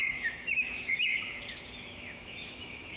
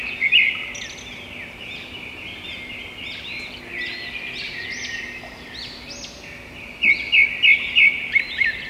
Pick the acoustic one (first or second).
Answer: second